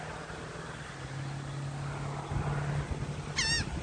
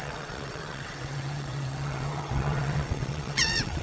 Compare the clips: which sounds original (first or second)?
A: first